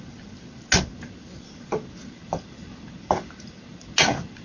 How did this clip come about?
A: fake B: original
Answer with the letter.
B